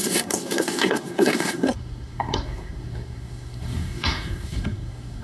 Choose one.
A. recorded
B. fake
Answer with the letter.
B